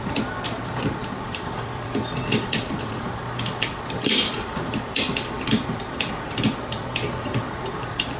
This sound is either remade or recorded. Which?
remade